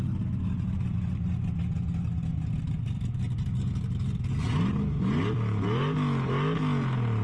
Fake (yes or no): no